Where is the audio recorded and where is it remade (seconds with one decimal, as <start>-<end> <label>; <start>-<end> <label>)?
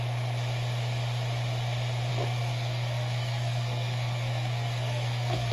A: 0.0-2.1 recorded; 2.1-5.5 remade